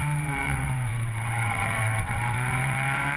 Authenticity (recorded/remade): remade